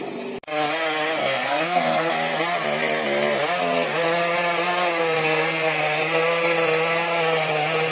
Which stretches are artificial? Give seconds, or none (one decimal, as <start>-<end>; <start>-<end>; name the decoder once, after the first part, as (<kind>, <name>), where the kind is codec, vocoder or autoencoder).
1.2-2.1 (codec, SNAC); 5.0-5.8